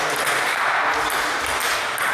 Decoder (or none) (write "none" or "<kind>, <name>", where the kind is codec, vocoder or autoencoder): none